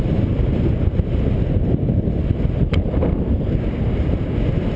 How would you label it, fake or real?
real